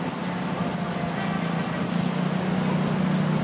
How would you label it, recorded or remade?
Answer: recorded